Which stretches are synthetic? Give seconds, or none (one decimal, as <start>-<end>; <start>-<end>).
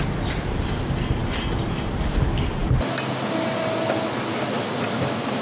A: none